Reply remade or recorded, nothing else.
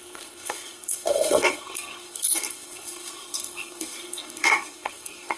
remade